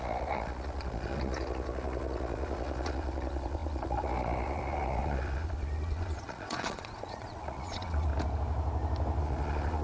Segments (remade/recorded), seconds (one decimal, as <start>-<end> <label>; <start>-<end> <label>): 0.0-8.1 remade; 8.1-9.2 recorded; 9.2-9.8 remade